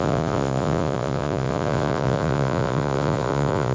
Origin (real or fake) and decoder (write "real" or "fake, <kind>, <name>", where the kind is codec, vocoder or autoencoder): fake, vocoder, Vocos